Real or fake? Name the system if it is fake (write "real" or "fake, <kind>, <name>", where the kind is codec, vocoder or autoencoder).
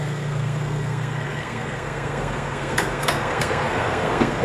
fake, codec, SNAC